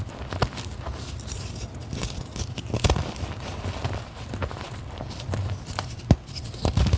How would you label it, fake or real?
real